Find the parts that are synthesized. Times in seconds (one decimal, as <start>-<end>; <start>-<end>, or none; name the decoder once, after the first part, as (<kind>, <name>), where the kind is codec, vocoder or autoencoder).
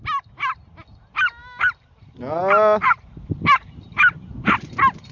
none